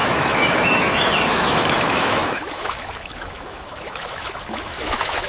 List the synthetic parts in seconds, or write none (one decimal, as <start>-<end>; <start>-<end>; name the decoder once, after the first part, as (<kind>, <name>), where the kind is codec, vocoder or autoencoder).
0.0-5.3 (autoencoder, DAC-VAE)